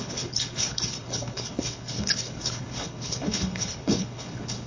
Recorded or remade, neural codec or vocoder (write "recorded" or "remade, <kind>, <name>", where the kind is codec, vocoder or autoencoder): remade, codec, HILCodec